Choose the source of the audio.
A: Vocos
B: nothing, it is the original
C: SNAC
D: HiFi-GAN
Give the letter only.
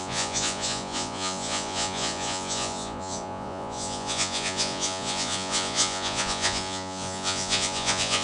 A